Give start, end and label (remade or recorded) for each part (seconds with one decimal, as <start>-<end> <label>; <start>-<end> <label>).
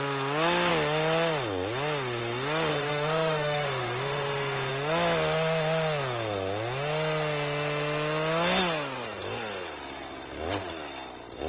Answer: 0.0-2.7 recorded; 2.7-4.7 remade; 4.7-11.5 recorded